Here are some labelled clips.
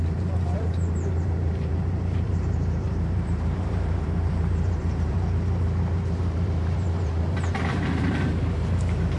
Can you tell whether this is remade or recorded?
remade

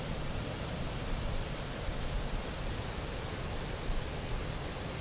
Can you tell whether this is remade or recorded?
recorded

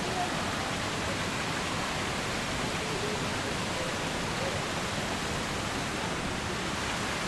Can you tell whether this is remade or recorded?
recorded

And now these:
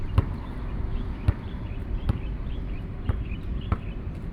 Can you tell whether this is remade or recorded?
remade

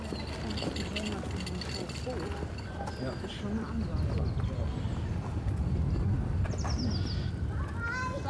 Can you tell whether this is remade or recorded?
recorded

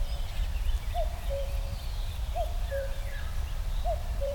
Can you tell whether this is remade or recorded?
remade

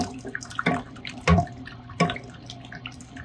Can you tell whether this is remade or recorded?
recorded